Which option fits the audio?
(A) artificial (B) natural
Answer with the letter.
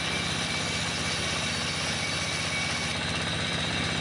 B